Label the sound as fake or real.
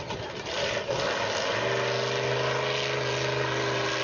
real